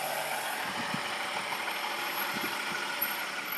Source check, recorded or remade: remade